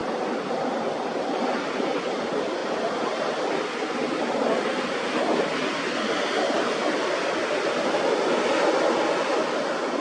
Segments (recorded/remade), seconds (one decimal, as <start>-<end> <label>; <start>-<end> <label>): 0.0-10.0 recorded